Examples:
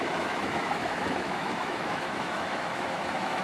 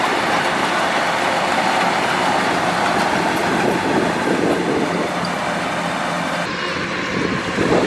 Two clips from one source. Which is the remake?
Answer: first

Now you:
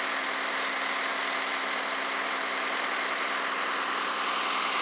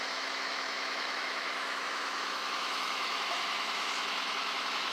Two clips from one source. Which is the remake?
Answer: second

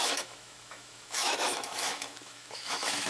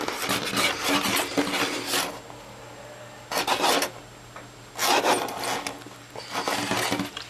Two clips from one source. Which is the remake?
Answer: first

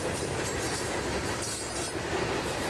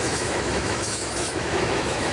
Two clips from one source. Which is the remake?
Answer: second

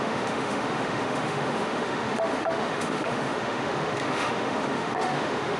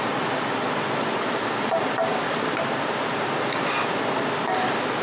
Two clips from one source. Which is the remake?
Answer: first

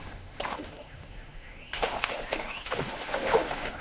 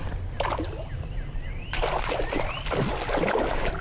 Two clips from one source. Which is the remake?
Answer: first